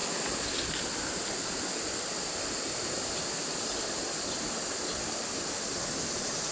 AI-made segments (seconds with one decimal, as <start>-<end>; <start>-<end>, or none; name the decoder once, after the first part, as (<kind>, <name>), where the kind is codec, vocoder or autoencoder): none